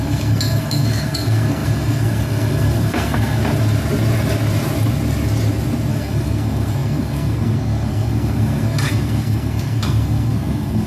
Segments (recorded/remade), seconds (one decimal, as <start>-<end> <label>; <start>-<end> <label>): 0.0-3.4 remade; 3.4-5.9 recorded; 5.9-10.9 remade